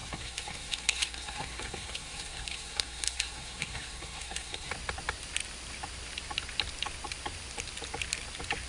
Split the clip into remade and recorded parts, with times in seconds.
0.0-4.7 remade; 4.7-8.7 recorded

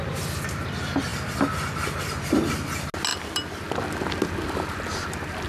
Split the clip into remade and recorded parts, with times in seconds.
0.0-5.5 recorded

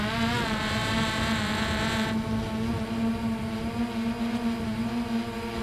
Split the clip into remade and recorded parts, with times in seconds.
0.0-5.6 recorded

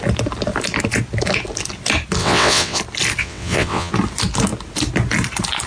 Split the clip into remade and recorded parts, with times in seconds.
0.0-2.2 recorded; 2.2-2.8 remade; 2.8-3.2 recorded; 3.2-3.9 remade; 3.9-5.7 recorded

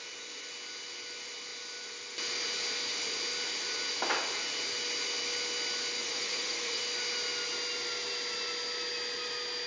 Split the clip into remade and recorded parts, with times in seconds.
0.0-6.0 recorded; 6.0-6.8 remade; 6.8-9.7 recorded

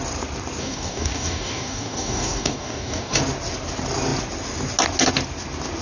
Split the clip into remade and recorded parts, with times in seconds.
0.0-0.6 recorded; 0.6-3.2 remade; 3.2-5.8 recorded

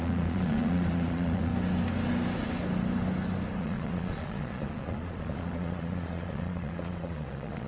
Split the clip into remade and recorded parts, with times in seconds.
0.0-1.5 remade; 1.5-3.6 recorded; 3.6-7.7 remade

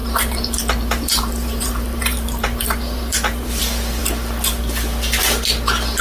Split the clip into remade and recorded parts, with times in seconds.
0.0-3.6 remade; 3.6-6.0 recorded